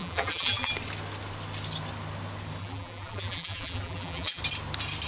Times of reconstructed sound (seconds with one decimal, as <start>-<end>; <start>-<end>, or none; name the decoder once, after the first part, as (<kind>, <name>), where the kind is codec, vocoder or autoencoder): 0.0-0.7 (vocoder, BigVGAN v2); 2.6-4.4

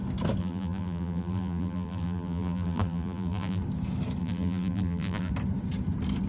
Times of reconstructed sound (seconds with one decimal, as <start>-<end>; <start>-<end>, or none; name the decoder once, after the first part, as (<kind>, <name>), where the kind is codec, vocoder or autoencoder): 0.4-3.6 (vocoder, BigVGAN v2); 4.2-5.3

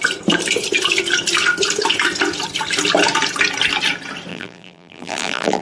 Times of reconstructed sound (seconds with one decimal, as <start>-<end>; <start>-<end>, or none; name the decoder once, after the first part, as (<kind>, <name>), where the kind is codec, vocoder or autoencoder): 4.3-5.6 (vocoder, BigVGAN v2)

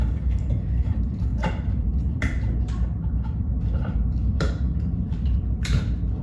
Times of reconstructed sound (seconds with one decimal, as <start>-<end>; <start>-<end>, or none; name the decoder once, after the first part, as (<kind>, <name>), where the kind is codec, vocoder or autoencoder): 0.0-6.2 (vocoder, BigVGAN v2)

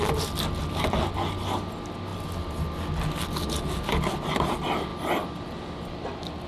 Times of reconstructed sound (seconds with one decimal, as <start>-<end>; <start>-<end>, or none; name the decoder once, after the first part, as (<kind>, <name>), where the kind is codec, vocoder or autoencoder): 4.9-6.1 (vocoder, BigVGAN v2)

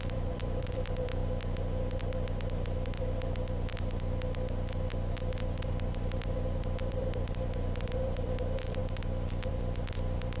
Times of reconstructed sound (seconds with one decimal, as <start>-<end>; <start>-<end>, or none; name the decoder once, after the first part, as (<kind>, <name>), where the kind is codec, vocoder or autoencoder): 0.0-1.2 (vocoder, BigVGAN v2); 5.4-8.8; 9.5-10.4